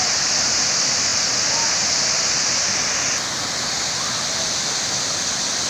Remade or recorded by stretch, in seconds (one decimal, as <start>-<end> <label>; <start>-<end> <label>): 0.0-5.7 recorded